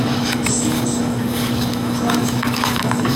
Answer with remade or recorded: remade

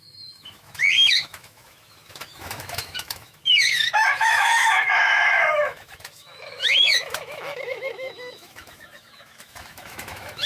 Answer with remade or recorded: remade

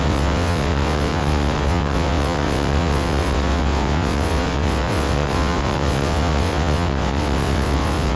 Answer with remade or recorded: remade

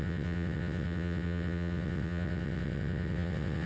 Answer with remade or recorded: remade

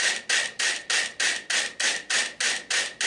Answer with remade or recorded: recorded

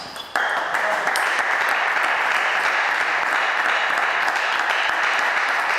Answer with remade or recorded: remade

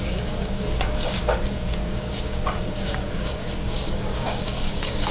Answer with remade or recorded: remade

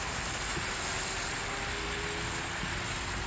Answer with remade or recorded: recorded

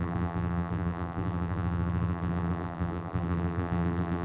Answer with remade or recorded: remade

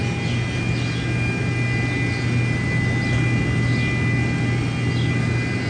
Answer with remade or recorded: recorded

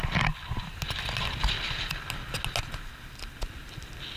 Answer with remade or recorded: recorded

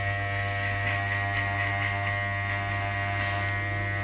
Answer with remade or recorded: recorded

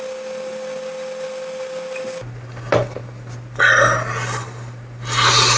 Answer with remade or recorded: recorded